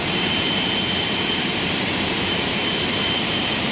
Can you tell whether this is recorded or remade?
remade